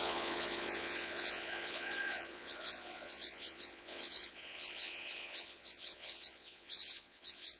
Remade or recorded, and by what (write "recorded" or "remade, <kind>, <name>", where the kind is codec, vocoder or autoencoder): remade, vocoder, Vocos